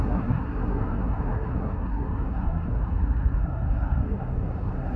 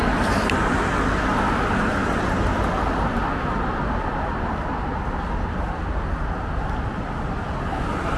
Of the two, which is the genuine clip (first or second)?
second